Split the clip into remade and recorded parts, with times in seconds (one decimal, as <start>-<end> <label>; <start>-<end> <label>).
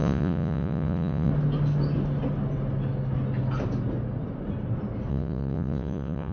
0.0-1.3 remade; 1.3-5.1 recorded; 5.1-6.3 remade